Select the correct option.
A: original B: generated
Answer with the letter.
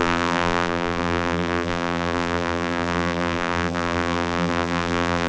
B